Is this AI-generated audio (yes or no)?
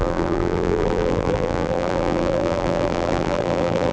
yes